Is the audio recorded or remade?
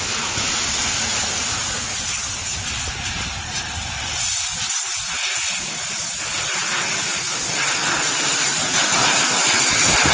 recorded